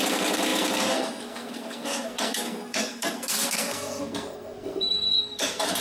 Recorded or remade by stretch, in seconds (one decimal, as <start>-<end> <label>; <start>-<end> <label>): 0.0-5.8 remade